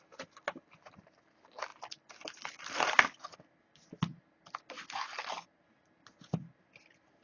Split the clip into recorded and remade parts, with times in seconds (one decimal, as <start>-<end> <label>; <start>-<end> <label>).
0.0-7.2 recorded